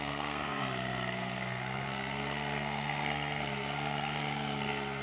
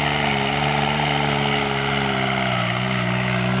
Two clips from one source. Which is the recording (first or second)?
second